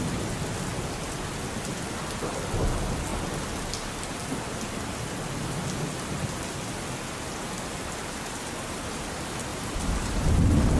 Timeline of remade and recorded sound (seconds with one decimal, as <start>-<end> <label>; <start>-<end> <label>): 0.0-9.5 recorded; 9.5-10.8 remade